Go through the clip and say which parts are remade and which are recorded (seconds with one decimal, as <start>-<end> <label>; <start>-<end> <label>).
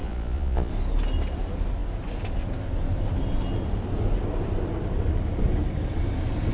0.0-0.7 remade; 0.7-6.5 recorded